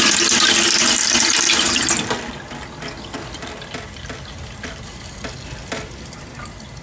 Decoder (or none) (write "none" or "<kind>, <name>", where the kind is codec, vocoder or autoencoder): none